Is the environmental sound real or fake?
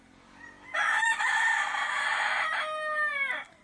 real